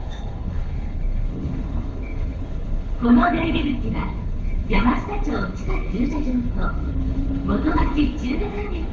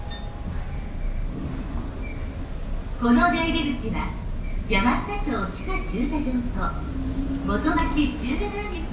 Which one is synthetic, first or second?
first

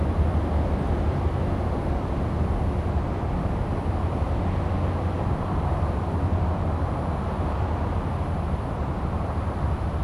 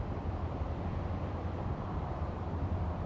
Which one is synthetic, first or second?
second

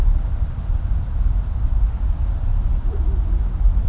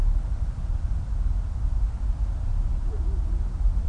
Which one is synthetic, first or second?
first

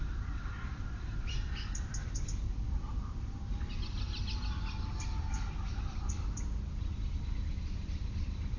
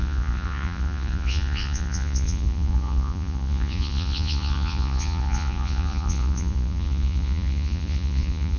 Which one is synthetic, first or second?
second